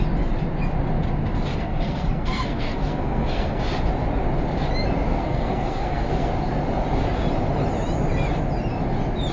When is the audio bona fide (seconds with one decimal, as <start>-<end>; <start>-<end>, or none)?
0.0-1.5; 3.6-5.1; 6.3-9.3